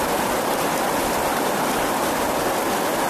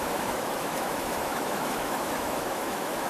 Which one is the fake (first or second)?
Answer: second